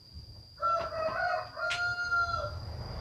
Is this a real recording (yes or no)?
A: yes